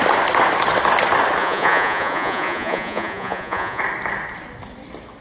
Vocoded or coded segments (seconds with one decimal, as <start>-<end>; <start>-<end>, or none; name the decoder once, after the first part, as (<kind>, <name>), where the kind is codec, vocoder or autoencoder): 1.4-3.8 (vocoder, Vocos)

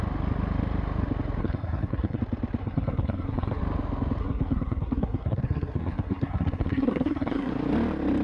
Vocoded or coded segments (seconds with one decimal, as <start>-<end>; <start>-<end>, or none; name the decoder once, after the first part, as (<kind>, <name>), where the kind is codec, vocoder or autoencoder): 1.4-2.2 (codec, SNAC); 2.6-3.6; 4.2-7.5

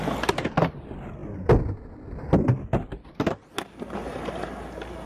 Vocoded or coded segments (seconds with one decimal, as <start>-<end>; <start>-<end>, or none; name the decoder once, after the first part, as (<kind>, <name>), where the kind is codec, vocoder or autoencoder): none

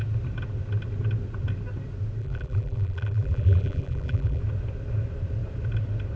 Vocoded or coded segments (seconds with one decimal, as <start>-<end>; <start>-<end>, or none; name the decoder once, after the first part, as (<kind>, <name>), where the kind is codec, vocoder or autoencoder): 2.2-4.4 (vocoder, BigVGAN v2)

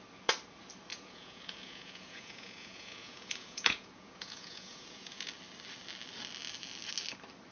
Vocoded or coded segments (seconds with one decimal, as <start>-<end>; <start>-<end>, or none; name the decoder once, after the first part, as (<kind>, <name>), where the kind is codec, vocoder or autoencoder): 0.9-5.3 (vocoder, Vocos)